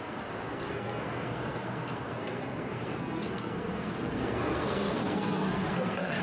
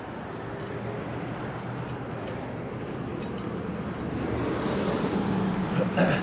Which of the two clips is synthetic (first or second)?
first